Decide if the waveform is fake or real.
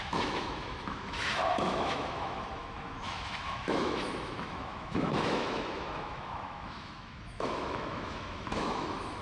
fake